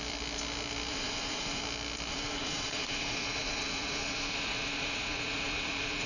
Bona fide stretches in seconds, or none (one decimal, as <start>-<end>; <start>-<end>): 0.0-0.9; 1.6-2.1